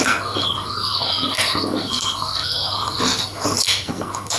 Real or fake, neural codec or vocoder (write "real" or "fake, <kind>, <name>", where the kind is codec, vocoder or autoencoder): fake, codec, SNAC